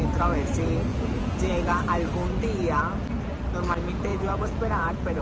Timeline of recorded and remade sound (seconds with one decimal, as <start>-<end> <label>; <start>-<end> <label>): 0.0-0.9 recorded; 0.9-1.5 remade; 1.5-4.1 recorded; 4.1-5.2 remade